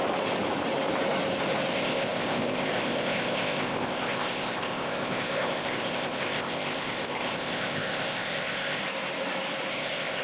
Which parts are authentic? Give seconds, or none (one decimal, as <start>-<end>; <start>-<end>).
0.0-1.7; 8.8-9.7